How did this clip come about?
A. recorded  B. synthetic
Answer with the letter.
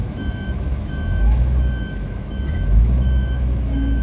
B